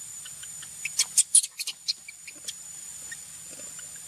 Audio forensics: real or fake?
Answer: real